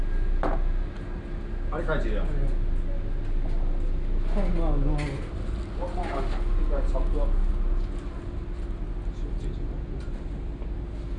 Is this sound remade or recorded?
recorded